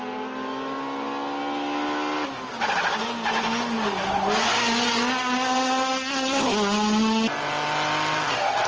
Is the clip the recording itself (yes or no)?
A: yes